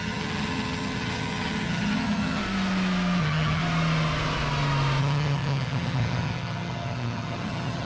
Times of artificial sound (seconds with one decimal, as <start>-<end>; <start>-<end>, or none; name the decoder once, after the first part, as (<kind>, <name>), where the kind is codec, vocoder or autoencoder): 0.0-2.4 (vocoder, HiFi-GAN); 3.2-3.6; 5.0-7.9